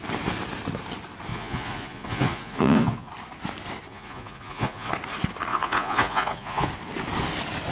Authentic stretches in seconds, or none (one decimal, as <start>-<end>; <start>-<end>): 0.0-1.3; 3.1-3.9; 4.9-5.5; 6.7-7.7